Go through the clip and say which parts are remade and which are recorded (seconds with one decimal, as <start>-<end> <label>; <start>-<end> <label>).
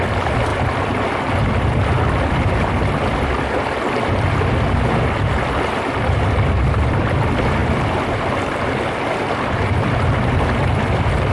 0.0-11.3 recorded